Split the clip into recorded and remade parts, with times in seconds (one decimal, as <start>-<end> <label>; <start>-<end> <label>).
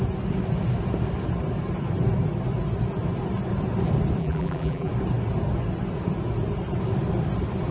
0.0-4.2 recorded; 4.2-4.9 remade; 4.9-7.7 recorded